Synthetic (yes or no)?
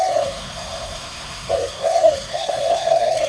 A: yes